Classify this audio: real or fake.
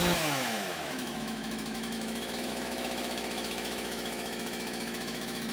fake